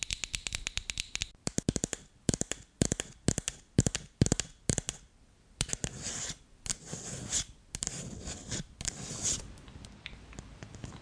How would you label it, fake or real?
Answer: real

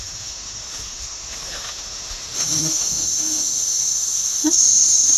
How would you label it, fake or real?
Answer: fake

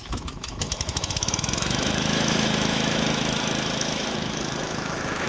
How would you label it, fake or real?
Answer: fake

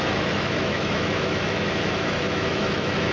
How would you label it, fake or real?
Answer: fake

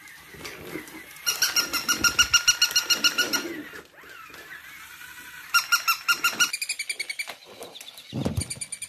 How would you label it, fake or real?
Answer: real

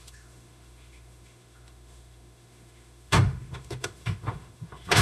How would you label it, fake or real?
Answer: fake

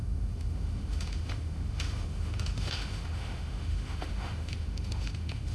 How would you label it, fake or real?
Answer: fake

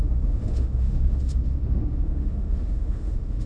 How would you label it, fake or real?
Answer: fake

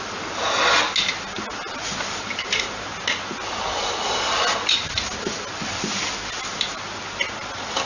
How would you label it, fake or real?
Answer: real